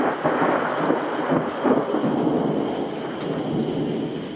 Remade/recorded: recorded